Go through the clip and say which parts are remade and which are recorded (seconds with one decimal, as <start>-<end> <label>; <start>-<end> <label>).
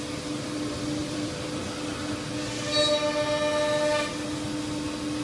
0.0-1.0 recorded; 1.0-1.6 remade; 1.6-5.2 recorded